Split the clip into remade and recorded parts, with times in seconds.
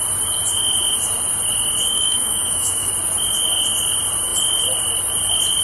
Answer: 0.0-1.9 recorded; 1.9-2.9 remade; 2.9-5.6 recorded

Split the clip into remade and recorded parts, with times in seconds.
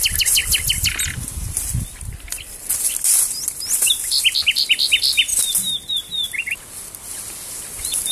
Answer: 0.0-8.1 recorded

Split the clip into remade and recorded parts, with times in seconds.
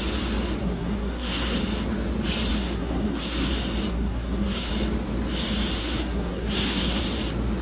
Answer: 0.0-0.6 recorded; 0.6-1.6 remade; 1.6-2.5 recorded; 2.5-3.5 remade; 3.5-3.9 recorded; 3.9-4.7 remade; 4.7-5.8 recorded; 5.8-7.0 remade; 7.0-7.6 recorded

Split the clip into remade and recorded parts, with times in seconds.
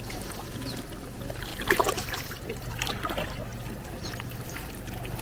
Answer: 0.0-1.5 recorded; 1.5-3.0 remade; 3.0-3.5 recorded; 3.5-4.1 remade; 4.1-5.2 recorded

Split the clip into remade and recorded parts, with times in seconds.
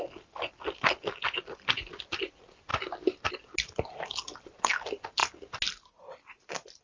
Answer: 0.0-2.7 recorded; 2.7-3.3 remade; 3.3-6.8 recorded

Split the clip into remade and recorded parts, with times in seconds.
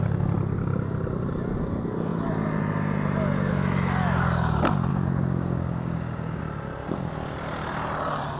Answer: 0.0-4.9 recorded; 4.9-6.4 remade; 6.4-8.4 recorded